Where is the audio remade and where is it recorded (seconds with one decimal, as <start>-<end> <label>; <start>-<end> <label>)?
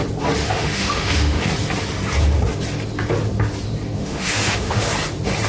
0.0-0.4 recorded; 0.4-1.5 remade; 1.5-4.0 recorded; 4.0-4.9 remade; 4.9-5.5 recorded